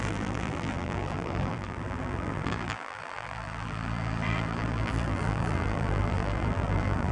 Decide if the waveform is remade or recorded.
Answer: remade